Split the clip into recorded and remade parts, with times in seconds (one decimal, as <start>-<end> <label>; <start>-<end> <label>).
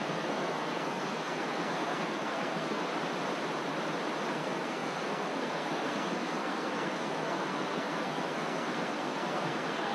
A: 0.0-2.9 remade; 2.9-4.3 recorded; 4.3-9.9 remade